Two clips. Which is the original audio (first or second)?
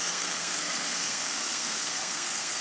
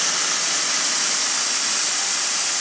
second